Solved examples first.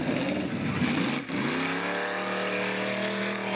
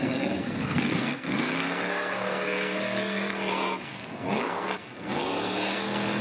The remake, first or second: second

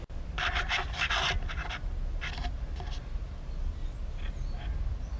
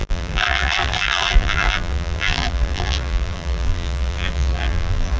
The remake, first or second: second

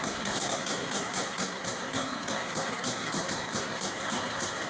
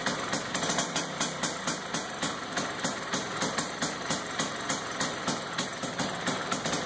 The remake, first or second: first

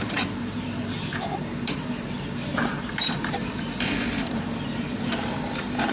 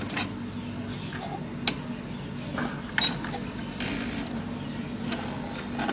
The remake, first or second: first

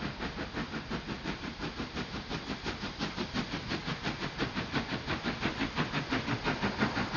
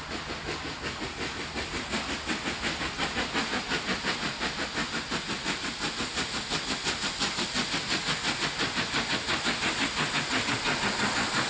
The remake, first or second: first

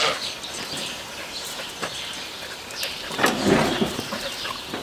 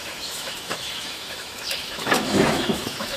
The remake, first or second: second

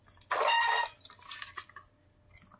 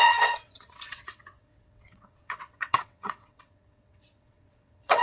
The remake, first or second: second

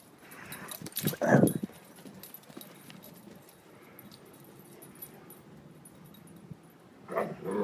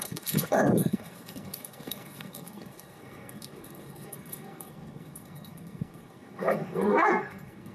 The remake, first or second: second